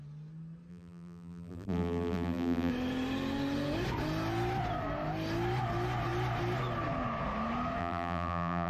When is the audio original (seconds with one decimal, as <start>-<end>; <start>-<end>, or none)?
0.0-0.7; 2.7-7.8